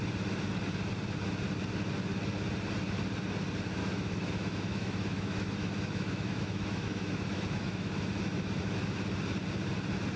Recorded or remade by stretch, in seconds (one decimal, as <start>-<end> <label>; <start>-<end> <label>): 0.0-3.8 recorded; 3.8-8.6 remade; 8.6-10.2 recorded